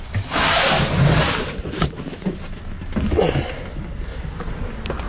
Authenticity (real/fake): real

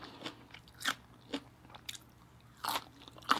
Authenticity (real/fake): real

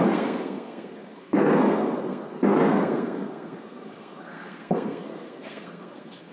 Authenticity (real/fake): fake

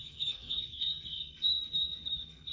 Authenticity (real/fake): fake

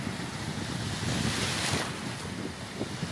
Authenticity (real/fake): real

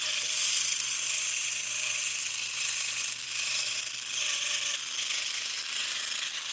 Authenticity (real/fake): real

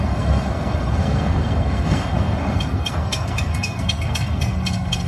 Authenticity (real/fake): fake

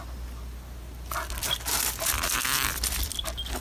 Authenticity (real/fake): real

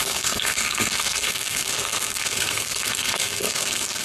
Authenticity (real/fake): fake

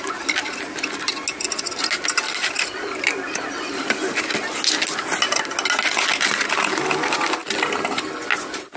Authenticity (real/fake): real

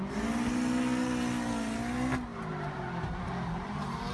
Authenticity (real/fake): real